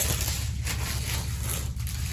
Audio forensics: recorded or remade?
recorded